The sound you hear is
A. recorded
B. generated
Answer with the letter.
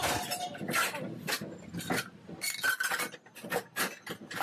A